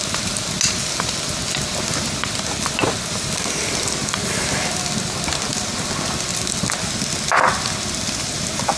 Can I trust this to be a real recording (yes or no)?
yes